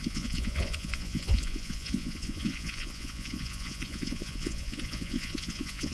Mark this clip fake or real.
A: fake